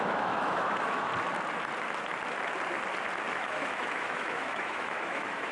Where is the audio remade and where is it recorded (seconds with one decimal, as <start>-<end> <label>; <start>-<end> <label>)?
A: 0.0-1.1 remade; 1.1-3.3 recorded; 3.3-5.5 remade